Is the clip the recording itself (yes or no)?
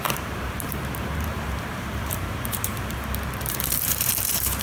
no